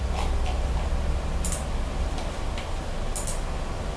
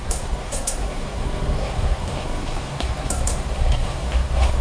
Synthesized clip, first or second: second